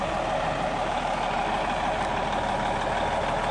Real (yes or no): yes